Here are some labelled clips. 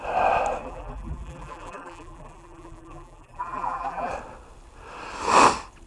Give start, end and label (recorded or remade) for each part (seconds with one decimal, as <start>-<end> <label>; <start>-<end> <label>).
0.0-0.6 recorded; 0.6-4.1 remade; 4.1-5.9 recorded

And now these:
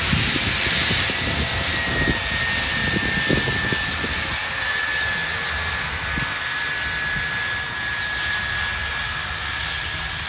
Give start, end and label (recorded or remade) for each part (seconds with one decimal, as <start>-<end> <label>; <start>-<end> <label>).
0.0-2.8 recorded; 2.8-4.7 remade; 4.7-10.3 recorded

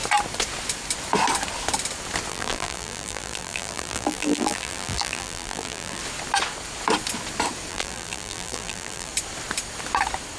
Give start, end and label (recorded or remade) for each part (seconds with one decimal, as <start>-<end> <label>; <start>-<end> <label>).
0.0-2.3 recorded; 2.3-6.0 remade; 6.0-7.7 recorded; 7.7-9.1 remade; 9.1-10.4 recorded

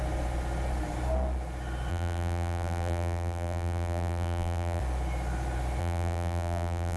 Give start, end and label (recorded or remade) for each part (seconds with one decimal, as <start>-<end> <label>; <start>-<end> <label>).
0.0-1.9 recorded; 1.9-4.8 remade; 4.8-5.8 recorded; 5.8-7.0 remade

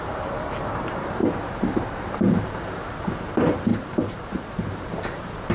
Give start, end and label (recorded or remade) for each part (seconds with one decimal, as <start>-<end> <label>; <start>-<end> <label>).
0.0-5.5 remade

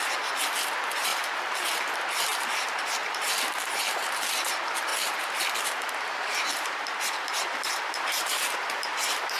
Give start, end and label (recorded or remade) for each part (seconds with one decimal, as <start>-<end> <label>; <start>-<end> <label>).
0.0-9.4 remade